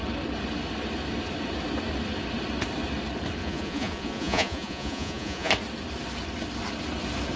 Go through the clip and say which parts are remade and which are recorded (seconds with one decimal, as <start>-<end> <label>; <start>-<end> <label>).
0.0-3.4 recorded; 3.4-5.5 remade; 5.5-7.4 recorded